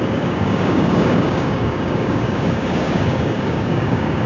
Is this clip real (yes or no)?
no